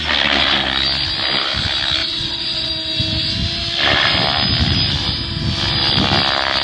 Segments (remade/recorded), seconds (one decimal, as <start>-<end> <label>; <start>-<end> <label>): 0.0-2.0 recorded; 2.0-2.7 remade; 2.7-6.6 recorded